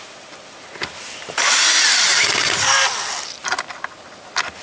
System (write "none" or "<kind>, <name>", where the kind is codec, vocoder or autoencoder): none